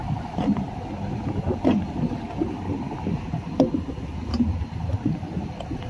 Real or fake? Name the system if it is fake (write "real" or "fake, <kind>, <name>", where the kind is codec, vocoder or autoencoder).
real